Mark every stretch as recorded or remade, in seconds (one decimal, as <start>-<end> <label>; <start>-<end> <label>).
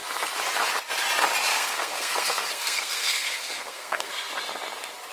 0.0-1.5 recorded; 1.5-4.1 remade; 4.1-5.1 recorded